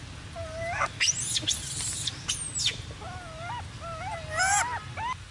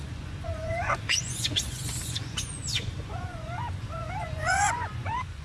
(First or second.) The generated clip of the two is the second